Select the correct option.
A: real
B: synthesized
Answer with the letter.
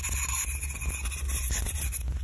A